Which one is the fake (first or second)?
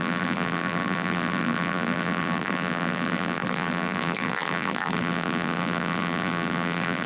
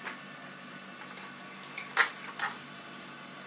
first